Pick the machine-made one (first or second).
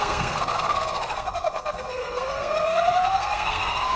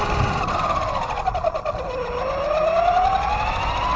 first